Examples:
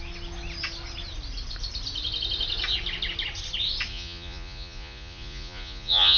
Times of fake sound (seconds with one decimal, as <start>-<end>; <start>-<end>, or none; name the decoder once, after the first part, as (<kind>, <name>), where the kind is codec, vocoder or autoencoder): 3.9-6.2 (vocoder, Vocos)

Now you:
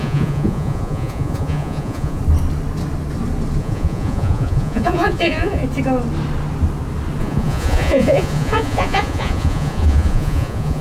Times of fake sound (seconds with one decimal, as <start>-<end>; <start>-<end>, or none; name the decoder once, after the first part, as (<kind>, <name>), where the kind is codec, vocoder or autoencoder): 0.0-2.2 (vocoder, Vocos); 3.6-5.6; 7.2-10.8

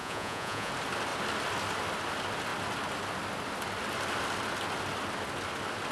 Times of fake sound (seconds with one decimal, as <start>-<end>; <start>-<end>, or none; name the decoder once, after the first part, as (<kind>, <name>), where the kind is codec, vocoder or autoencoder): 0.0-0.7 (vocoder, Vocos)

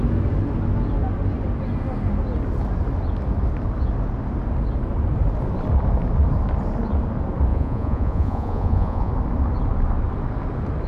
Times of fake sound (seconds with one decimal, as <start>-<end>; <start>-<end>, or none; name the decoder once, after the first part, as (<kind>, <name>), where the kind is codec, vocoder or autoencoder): 7.5-9.1 (vocoder, Vocos)

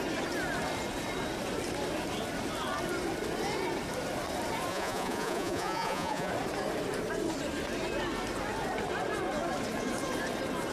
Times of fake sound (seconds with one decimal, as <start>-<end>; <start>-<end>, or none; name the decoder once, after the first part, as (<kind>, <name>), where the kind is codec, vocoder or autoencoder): 4.7-6.3 (vocoder, Vocos)

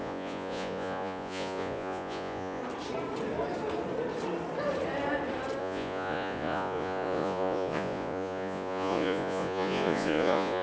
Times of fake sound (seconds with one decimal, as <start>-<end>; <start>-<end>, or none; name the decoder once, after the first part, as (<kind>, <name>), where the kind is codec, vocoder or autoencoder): 0.0-2.6 (vocoder, Vocos); 5.6-10.6